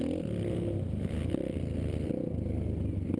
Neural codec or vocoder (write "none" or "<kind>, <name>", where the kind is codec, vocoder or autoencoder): none